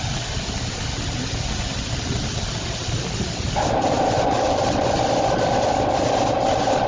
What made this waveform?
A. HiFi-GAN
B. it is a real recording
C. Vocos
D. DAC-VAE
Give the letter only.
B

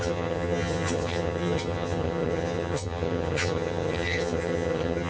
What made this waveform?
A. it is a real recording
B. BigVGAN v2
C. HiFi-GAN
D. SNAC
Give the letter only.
C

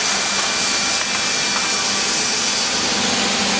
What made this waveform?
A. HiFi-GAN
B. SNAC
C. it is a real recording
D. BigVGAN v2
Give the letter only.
C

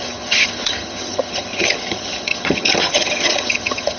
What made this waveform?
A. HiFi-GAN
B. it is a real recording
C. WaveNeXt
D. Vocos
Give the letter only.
A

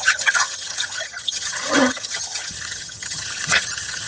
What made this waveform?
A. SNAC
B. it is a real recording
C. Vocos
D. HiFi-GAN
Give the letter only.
D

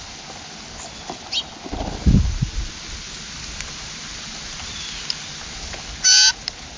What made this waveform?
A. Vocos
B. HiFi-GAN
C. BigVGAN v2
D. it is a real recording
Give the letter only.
D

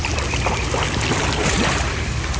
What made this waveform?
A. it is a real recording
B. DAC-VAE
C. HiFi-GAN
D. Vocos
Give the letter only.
A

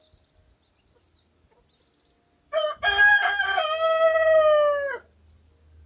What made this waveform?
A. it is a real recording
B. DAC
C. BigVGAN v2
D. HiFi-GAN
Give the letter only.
A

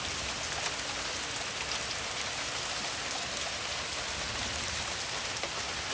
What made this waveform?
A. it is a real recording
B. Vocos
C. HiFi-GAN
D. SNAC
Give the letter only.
A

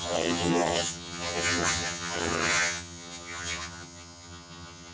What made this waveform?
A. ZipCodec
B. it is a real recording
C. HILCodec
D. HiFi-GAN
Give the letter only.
D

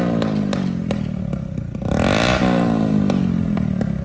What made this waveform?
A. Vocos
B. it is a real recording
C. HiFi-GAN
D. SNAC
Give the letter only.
B